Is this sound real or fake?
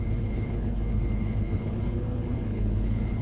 fake